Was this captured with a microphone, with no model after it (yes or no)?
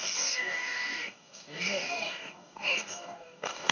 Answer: no